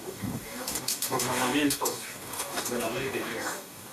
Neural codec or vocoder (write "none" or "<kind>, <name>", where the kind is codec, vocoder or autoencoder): codec, DAC